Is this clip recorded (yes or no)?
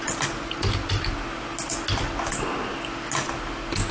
yes